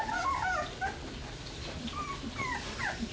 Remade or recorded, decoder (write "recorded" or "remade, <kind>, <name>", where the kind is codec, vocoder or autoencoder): recorded